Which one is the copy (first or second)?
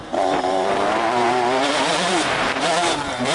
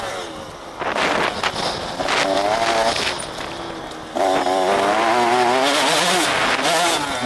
first